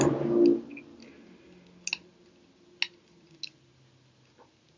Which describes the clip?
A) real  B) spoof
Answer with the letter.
A